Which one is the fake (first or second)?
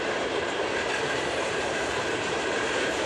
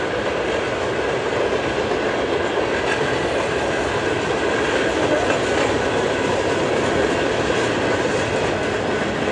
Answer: first